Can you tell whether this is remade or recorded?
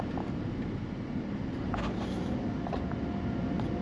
recorded